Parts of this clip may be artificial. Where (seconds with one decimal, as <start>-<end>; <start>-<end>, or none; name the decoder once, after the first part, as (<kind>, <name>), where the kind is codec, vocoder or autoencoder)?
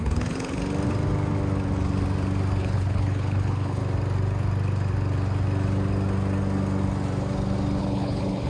0.0-0.6 (codec, HILCodec); 2.6-3.8; 7.8-8.5